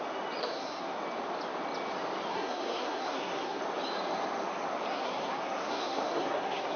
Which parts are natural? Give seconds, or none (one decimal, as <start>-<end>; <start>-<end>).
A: 0.0-0.4; 1.0-2.3; 3.6-4.9